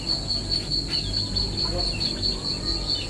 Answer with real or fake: real